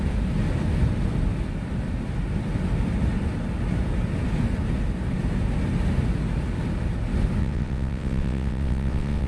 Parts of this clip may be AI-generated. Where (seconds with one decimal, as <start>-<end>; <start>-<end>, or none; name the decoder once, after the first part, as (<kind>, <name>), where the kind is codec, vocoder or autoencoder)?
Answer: 7.4-9.3 (vocoder, WaveNeXt)